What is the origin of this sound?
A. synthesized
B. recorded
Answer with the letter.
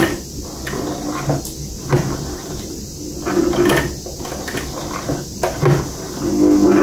B